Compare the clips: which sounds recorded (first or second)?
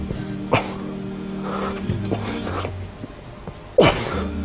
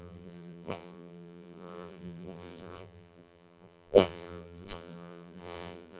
first